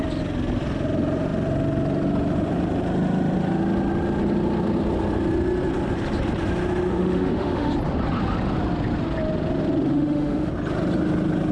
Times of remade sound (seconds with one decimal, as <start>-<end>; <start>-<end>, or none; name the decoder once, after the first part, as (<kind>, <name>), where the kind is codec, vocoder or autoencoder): 6.9-7.7 (autoencoder, DAC-VAE); 9.9-10.5